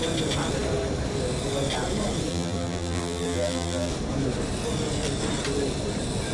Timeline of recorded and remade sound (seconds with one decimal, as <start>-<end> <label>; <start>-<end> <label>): 0.0-2.3 recorded; 2.3-3.9 remade; 3.9-6.3 recorded